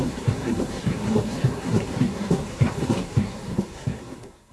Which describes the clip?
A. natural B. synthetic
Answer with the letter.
B